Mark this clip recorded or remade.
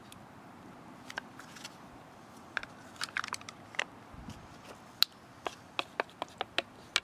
recorded